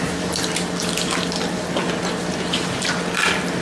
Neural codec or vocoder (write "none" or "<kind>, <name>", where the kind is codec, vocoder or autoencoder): none